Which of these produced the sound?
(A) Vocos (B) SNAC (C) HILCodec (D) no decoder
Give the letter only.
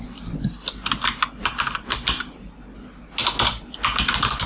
D